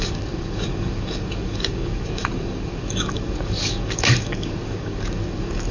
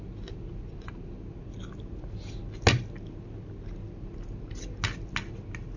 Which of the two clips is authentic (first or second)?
second